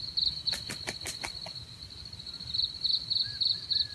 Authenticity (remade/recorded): recorded